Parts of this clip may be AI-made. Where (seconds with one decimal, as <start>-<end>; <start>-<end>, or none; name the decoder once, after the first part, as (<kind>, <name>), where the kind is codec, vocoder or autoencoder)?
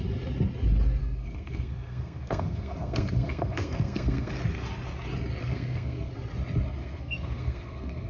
1.0-4.3 (codec, SNAC); 5.4-6.1; 6.8-8.1